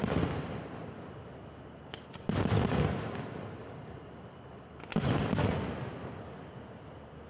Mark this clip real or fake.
real